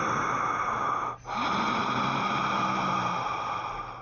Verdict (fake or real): real